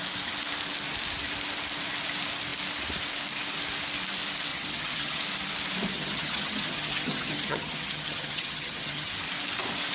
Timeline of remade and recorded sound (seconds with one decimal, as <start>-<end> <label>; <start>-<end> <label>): 0.0-4.5 recorded; 4.5-5.2 remade; 5.2-5.9 recorded; 5.9-9.1 remade; 9.1-9.9 recorded